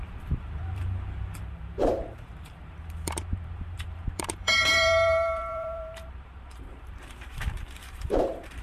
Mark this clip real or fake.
fake